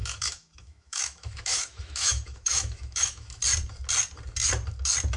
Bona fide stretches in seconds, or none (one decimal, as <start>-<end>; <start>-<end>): 3.4-5.2